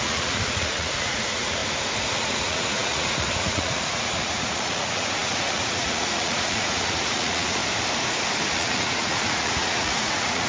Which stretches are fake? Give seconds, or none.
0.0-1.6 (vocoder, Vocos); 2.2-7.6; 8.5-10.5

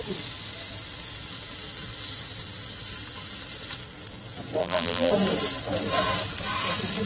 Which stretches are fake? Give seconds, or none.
4.6-5.1 (vocoder, BigVGAN v2)

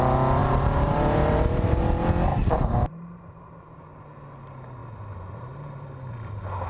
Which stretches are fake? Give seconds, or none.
0.4-1.8 (vocoder, BigVGAN v2); 2.3-4.0; 4.8-6.1

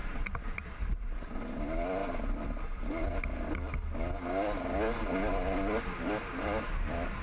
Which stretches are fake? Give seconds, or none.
0.0-1.6 (vocoder, BigVGAN v2)

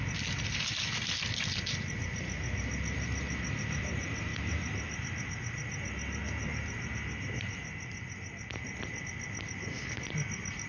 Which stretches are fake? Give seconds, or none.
none

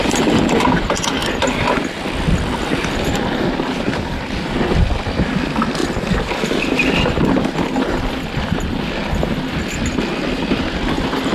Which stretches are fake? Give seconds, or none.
1.2-4.5 (vocoder, BigVGAN v2)

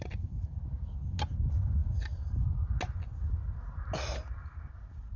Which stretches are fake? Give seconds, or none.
none